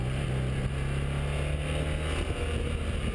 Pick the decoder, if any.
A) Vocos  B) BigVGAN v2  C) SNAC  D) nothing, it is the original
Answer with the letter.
D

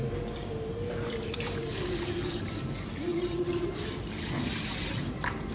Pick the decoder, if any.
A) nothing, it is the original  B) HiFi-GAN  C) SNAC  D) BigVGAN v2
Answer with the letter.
D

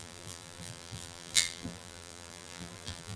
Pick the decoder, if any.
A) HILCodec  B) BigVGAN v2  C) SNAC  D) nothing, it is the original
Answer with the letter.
B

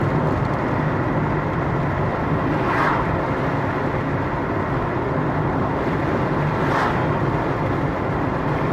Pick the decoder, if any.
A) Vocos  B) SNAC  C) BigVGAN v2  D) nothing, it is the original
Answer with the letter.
D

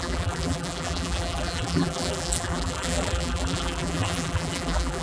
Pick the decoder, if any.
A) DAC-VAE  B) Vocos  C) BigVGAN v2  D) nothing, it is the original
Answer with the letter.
C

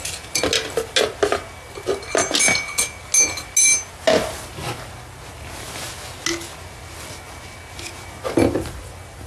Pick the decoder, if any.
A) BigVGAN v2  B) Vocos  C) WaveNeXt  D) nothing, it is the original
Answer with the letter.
D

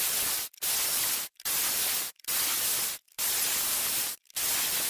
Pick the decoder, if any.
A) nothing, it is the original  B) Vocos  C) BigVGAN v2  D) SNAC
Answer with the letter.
A